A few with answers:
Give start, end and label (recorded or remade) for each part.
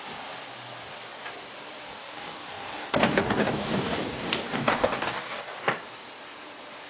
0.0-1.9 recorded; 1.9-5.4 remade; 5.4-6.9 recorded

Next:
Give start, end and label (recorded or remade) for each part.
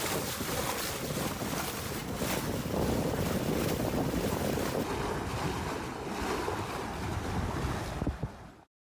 0.0-7.1 recorded; 7.1-7.7 remade; 7.7-8.9 recorded